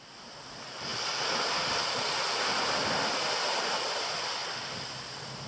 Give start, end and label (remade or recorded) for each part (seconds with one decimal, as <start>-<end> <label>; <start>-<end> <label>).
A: 0.0-5.5 recorded